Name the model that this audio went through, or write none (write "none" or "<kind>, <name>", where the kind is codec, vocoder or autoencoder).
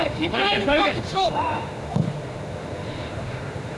autoencoder, DAC-VAE